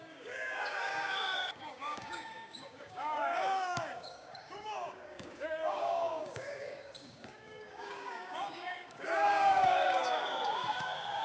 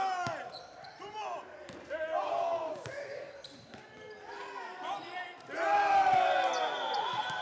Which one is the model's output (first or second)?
first